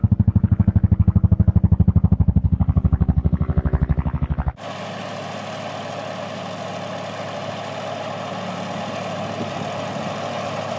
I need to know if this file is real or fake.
real